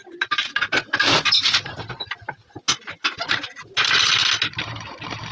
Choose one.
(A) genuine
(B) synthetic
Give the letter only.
A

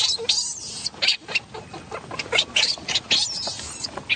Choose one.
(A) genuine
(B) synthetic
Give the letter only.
A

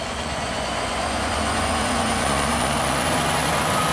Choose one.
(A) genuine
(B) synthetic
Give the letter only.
B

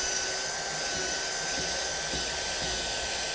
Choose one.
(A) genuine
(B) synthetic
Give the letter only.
A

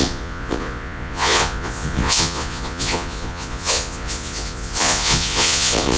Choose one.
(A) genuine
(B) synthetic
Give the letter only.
B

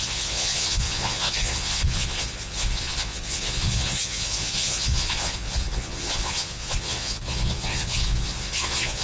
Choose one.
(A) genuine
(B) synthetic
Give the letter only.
B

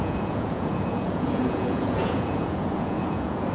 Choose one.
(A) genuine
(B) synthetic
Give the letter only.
B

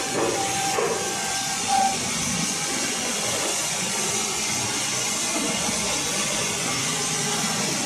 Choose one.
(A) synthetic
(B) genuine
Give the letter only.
A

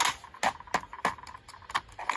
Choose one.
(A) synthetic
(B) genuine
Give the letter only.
B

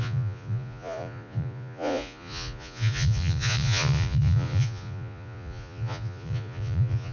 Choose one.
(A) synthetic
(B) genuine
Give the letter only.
A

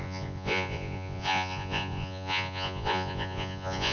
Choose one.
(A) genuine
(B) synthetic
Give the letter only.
B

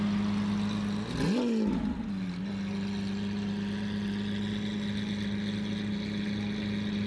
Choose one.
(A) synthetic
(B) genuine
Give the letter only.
B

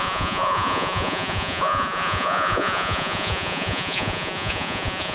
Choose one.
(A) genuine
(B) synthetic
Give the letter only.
B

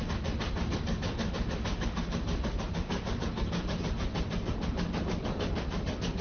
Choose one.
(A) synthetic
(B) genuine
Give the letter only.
B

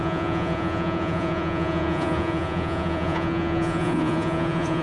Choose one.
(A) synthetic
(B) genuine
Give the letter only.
A